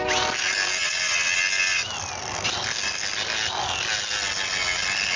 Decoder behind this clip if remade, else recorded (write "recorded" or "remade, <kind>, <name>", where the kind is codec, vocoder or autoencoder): recorded